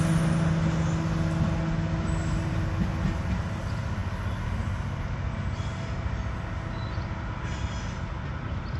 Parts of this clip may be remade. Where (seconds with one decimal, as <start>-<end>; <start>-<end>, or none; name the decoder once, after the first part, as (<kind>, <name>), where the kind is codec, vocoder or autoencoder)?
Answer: none